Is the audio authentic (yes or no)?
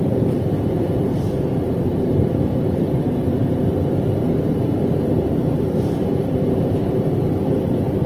no